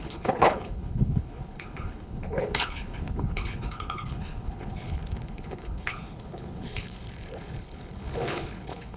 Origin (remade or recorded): remade